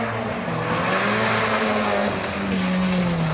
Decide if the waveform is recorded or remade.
recorded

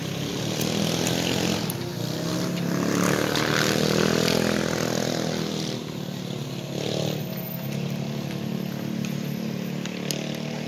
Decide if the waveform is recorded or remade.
recorded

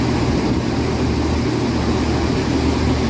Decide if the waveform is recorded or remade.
recorded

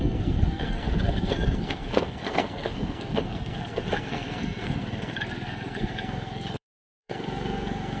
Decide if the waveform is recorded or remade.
remade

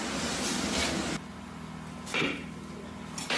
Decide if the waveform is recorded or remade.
recorded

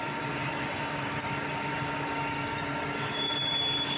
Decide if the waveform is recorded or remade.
remade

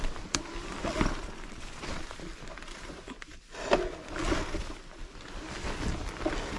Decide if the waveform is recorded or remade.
recorded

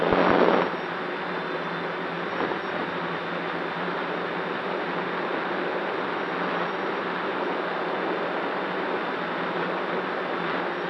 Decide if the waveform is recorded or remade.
recorded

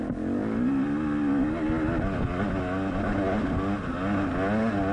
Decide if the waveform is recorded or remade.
recorded